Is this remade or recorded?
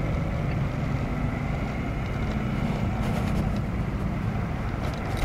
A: recorded